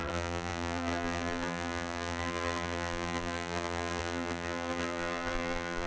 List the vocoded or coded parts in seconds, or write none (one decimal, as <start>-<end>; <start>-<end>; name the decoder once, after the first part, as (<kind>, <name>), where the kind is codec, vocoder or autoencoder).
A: 0.0-5.9 (vocoder, BigVGAN v2)